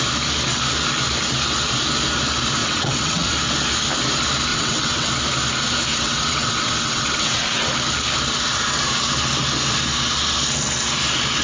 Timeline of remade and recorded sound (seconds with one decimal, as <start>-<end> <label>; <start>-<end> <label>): 0.0-2.6 recorded; 2.6-3.3 remade; 3.3-4.5 recorded; 4.5-5.1 remade; 5.1-5.9 recorded; 5.9-7.7 remade; 7.7-11.4 recorded